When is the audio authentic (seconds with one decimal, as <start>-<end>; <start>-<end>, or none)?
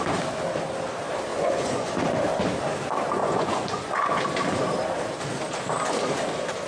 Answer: 0.0-1.3; 2.0-3.2; 4.2-6.7